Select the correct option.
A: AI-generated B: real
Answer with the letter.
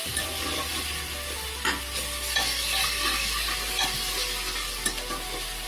B